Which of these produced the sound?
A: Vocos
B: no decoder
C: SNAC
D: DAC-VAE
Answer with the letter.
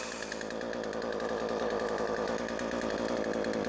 B